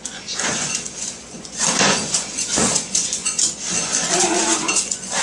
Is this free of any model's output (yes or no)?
no